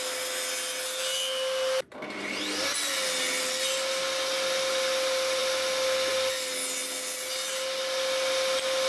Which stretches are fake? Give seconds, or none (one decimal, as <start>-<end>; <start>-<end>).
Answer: none